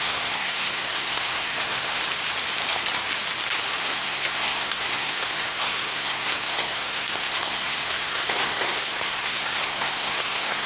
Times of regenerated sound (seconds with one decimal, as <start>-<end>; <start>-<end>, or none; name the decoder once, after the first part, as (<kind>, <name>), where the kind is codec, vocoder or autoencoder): 0.0-2.0 (codec, SNAC); 3.8-10.7